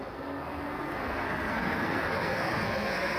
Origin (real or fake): fake